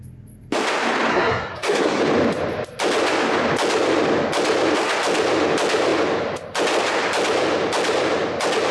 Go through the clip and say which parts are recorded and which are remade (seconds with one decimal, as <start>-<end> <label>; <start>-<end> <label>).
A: 0.0-1.1 recorded; 1.1-2.0 remade; 2.0-8.7 recorded